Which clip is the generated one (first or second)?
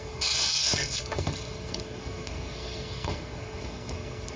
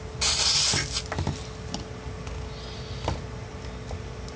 first